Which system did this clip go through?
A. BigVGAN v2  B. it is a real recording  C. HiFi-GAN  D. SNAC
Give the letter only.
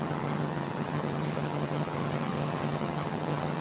C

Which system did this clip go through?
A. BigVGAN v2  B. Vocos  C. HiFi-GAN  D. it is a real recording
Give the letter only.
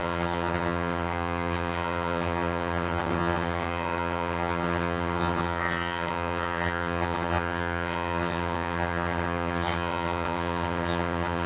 C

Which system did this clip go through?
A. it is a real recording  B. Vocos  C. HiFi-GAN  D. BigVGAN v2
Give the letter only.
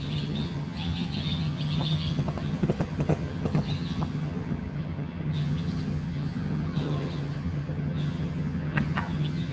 C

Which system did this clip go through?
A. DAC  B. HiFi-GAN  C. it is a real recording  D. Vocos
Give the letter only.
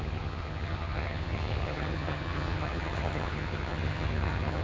B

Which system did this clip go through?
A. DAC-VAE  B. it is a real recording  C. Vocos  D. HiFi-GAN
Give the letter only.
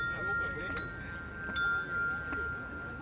B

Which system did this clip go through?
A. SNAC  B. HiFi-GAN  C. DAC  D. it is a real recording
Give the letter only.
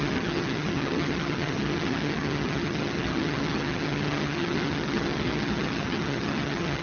B